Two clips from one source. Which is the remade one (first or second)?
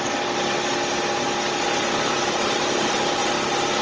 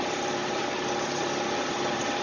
second